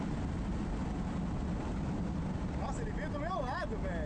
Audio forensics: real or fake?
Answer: real